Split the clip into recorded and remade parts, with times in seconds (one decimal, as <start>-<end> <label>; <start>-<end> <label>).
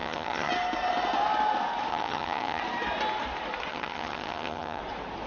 0.0-0.5 remade; 0.5-1.9 recorded; 1.9-2.6 remade; 2.6-3.7 recorded; 3.7-4.8 remade; 4.8-5.3 recorded